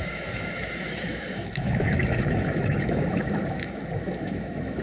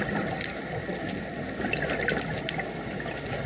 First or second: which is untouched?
second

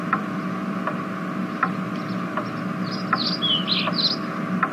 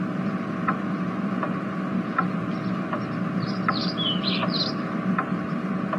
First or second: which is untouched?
first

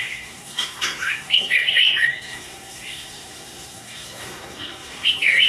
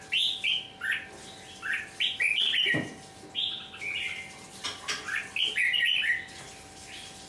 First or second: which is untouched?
second